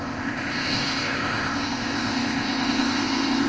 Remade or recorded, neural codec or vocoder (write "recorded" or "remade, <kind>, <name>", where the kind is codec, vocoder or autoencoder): remade, codec, ZipCodec